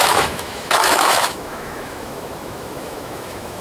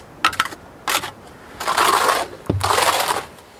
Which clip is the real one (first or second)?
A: second